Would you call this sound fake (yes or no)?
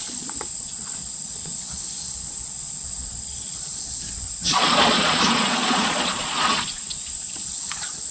yes